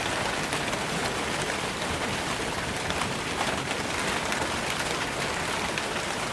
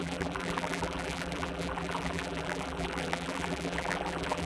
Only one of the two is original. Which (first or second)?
first